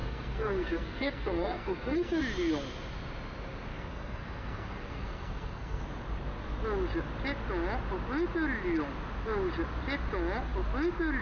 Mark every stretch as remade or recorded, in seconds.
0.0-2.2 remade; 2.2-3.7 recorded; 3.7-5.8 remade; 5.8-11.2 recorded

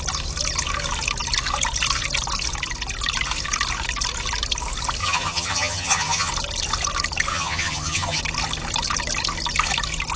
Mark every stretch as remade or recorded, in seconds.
0.0-5.0 recorded; 5.0-6.3 remade; 6.3-7.3 recorded; 7.3-8.2 remade; 8.2-10.2 recorded

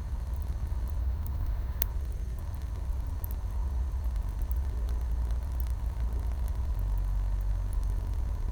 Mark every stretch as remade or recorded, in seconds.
0.0-1.0 recorded; 1.0-1.9 remade; 1.9-8.5 recorded

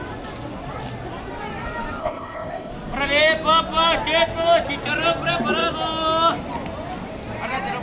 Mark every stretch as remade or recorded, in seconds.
0.0-2.0 recorded; 2.0-2.7 remade; 2.7-7.8 recorded

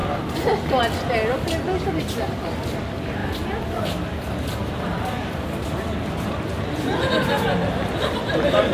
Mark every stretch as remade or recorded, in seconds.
0.0-0.8 remade; 0.8-8.7 recorded